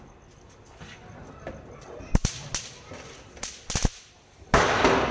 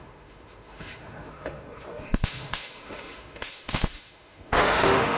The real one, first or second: first